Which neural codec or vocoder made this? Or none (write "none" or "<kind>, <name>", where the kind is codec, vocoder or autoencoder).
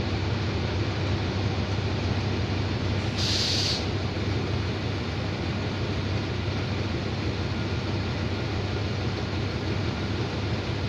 none